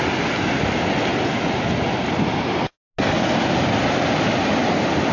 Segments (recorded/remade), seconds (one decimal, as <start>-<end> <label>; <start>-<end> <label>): 0.0-5.1 recorded